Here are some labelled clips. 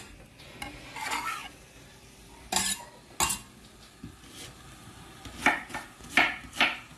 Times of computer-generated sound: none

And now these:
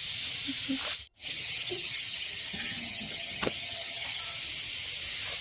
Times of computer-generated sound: 1.0-4.2 (vocoder, HiFi-GAN)

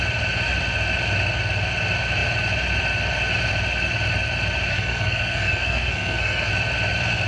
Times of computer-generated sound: 4.7-6.5 (codec, SNAC)

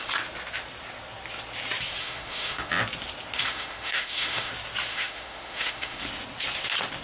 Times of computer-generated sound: 2.0-2.7 (autoencoder, DAC-VAE); 3.4-4.5; 4.9-6.0

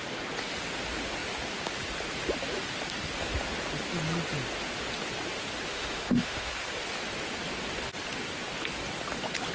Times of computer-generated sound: 5.7-6.5 (autoencoder, DAC-VAE)

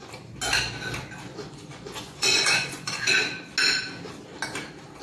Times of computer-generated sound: 1.3-3.1 (vocoder, Vocos)